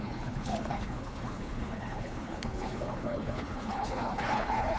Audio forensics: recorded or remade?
remade